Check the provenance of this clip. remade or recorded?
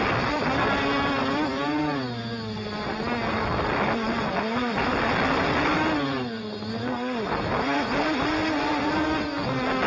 recorded